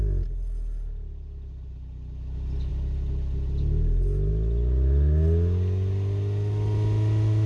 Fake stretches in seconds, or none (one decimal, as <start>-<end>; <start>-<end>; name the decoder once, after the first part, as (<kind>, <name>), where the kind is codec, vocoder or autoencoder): none